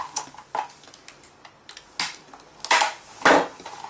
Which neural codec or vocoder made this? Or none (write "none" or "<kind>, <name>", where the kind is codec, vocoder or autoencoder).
none